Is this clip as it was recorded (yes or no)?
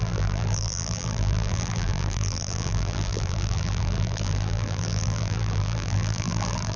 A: no